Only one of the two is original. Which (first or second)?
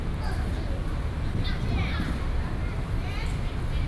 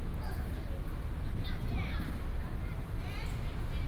second